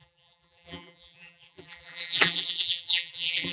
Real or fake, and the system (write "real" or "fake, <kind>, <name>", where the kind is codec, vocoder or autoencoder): fake, vocoder, BigVGAN v2